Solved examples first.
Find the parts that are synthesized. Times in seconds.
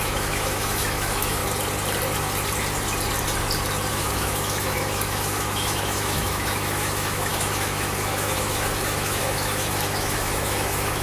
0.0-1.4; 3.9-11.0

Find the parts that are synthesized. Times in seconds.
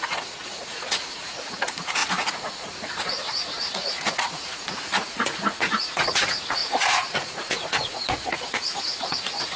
0.0-9.6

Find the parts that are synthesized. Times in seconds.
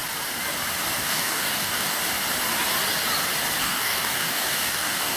1.0-2.0; 3.6-5.2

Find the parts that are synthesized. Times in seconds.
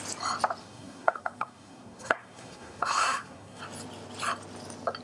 0.6-3.6